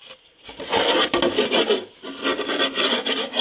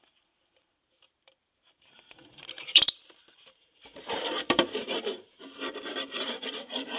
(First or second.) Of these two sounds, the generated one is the second